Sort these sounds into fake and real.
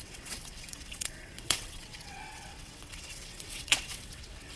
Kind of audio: fake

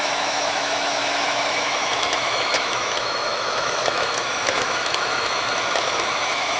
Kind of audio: fake